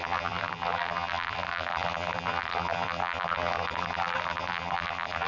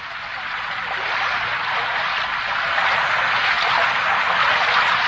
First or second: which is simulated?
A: first